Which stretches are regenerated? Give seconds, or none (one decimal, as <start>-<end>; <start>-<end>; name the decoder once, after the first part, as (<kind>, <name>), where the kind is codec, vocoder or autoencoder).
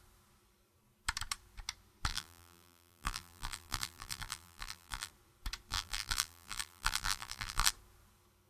2.1-5.1 (vocoder, BigVGAN v2); 5.7-7.7